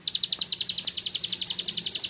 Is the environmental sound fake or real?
real